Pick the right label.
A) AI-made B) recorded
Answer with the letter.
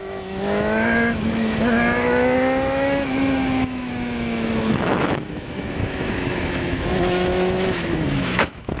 A